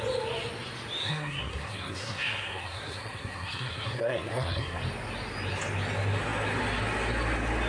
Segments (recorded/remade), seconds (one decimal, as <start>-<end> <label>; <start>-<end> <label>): 0.0-1.0 recorded; 1.0-4.8 remade; 4.8-7.7 recorded